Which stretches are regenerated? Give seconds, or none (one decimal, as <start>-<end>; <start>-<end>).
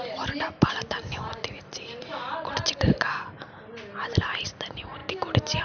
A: none